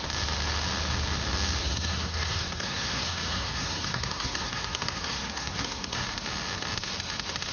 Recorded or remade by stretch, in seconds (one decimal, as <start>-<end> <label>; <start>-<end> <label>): 0.0-1.6 recorded; 1.6-6.0 remade; 6.0-7.5 recorded